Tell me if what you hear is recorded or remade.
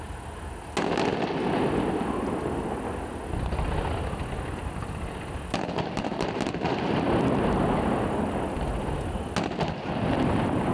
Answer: recorded